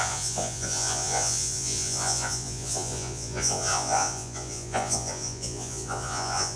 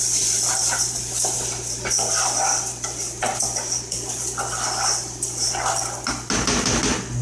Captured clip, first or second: second